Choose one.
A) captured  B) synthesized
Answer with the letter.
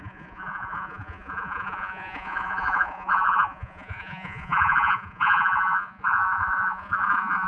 B